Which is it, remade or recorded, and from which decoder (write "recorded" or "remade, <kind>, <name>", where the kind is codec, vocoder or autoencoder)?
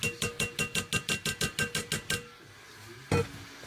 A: recorded